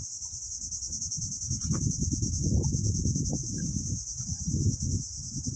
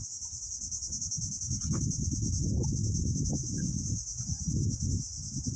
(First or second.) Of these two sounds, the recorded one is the second